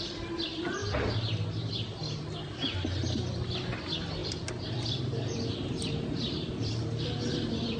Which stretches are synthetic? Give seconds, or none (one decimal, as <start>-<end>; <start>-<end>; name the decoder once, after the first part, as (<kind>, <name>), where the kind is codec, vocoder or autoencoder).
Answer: 0.0-0.8 (vocoder, BigVGAN v2); 2.2-7.8